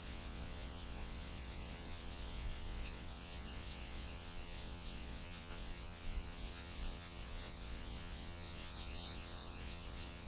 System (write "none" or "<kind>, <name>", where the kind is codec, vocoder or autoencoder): vocoder, WaveNeXt